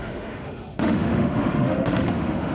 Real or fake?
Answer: fake